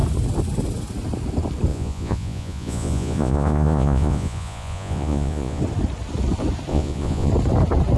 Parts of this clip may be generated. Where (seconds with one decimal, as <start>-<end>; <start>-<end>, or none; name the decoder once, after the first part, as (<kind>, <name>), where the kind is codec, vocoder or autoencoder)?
1.7-5.6 (vocoder, Vocos); 6.7-7.3